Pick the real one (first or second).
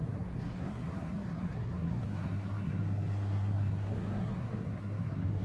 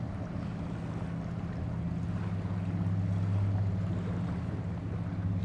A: second